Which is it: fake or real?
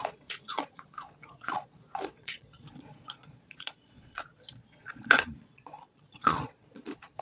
fake